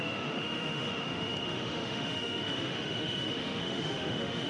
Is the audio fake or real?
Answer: fake